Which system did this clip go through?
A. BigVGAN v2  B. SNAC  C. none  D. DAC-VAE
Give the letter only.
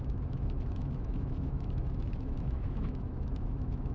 D